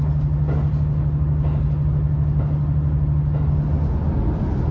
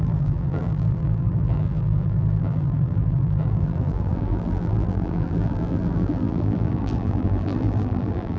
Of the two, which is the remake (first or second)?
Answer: second